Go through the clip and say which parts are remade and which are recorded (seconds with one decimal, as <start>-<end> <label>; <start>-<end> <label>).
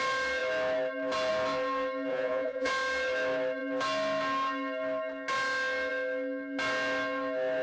0.0-2.1 recorded; 2.1-2.7 remade; 2.7-7.6 recorded